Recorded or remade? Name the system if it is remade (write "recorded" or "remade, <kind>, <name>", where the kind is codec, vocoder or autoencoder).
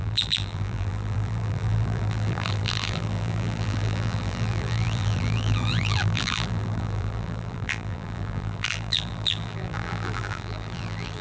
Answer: remade, vocoder, BigVGAN v2